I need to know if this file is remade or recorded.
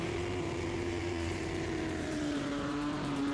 remade